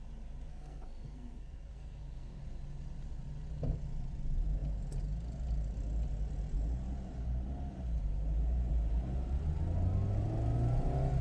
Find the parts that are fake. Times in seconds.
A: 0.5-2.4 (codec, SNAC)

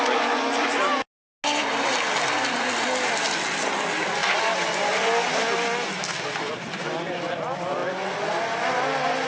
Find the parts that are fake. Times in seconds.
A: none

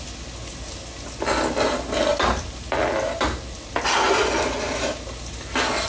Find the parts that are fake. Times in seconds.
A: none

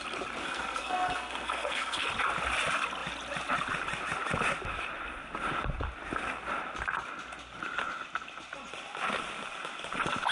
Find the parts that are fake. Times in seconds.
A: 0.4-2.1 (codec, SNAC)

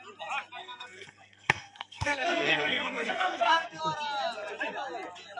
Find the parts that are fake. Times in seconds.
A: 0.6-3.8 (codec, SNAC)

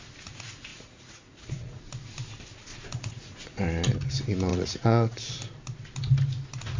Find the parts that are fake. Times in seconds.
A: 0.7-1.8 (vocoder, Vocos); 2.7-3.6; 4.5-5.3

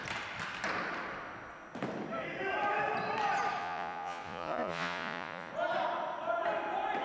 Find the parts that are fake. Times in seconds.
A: 3.6-5.5 (vocoder, Vocos)